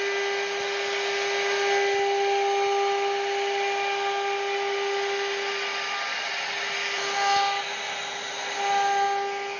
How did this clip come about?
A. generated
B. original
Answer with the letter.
B